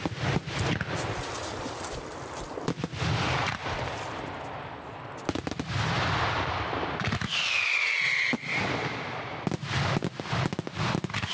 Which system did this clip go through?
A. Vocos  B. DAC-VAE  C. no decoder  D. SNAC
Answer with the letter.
C